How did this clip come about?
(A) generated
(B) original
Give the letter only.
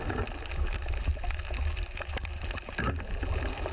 B